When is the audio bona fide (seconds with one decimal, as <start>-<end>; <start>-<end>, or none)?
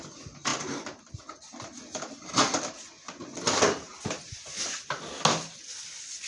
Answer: 0.0-0.5; 1.1-3.9; 5.1-6.3